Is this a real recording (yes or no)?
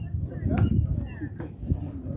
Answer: yes